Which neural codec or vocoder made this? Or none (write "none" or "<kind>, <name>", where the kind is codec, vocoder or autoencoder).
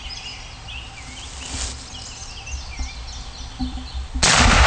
none